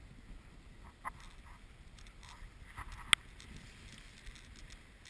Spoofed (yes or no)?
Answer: no